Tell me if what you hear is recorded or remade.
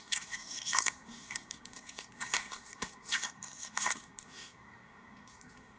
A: remade